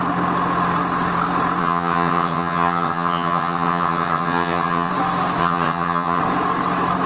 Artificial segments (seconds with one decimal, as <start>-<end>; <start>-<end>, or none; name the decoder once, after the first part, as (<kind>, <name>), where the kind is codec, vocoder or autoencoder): 1.6-4.9 (vocoder, HiFi-GAN); 5.4-6.2